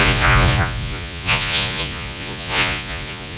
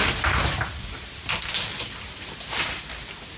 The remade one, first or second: first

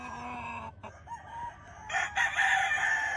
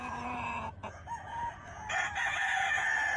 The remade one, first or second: second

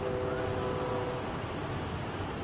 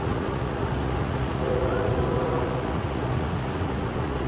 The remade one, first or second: second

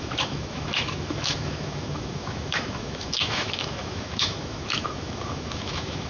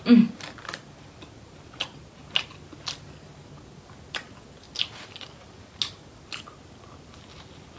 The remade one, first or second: first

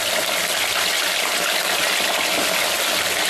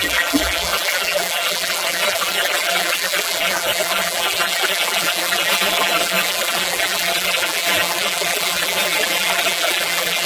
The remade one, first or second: second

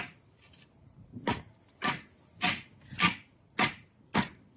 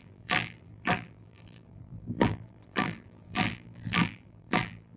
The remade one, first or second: second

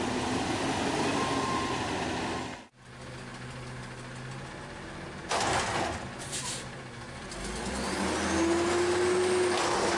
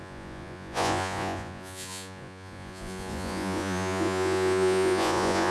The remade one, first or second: second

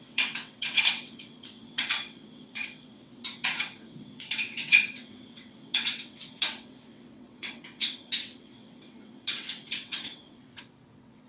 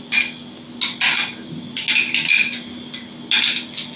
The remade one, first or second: first